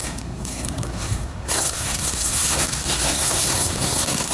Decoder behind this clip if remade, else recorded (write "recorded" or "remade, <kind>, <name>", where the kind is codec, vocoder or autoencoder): remade, codec, SNAC